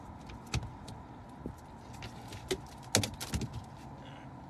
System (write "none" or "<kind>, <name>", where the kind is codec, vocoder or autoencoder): none